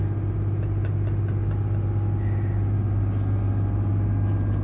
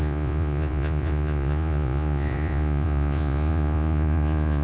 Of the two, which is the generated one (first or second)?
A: second